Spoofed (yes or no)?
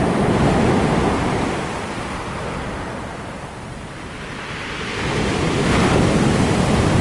no